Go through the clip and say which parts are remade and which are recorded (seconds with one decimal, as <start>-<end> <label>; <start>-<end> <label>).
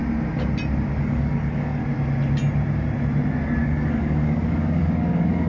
0.0-1.0 recorded; 1.0-1.8 remade; 1.8-3.6 recorded; 3.6-5.5 remade